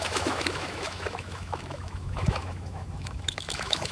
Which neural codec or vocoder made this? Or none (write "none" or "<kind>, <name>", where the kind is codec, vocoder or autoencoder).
autoencoder, DAC-VAE